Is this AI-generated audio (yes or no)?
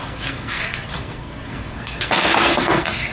yes